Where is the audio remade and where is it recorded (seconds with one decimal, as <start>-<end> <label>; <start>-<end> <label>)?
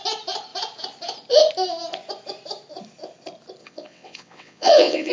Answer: 0.0-3.6 recorded; 3.6-5.1 remade